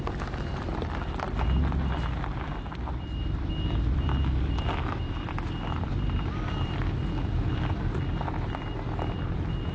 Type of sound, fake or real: fake